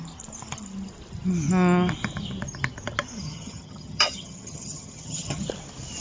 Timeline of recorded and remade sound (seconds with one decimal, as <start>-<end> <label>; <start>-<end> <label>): 0.0-3.2 recorded; 3.2-5.4 remade; 5.4-6.0 recorded